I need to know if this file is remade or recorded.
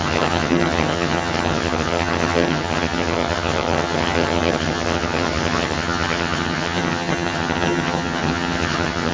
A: remade